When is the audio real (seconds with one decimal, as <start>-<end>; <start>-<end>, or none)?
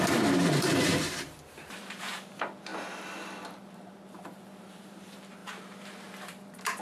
2.7-3.5